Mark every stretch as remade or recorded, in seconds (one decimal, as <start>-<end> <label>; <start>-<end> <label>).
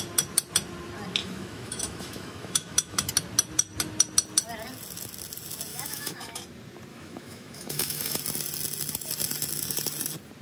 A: 0.0-1.2 recorded; 1.2-3.1 remade; 3.1-5.7 recorded; 5.7-6.4 remade; 6.4-6.9 recorded; 6.9-8.2 remade; 8.2-10.4 recorded